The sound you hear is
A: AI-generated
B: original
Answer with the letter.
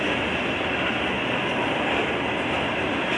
B